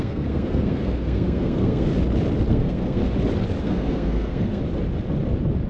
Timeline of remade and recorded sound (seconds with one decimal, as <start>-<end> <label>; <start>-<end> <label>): 0.0-1.9 remade; 1.9-2.5 recorded; 2.5-3.0 remade; 3.0-3.6 recorded; 3.6-4.6 remade; 4.6-5.7 recorded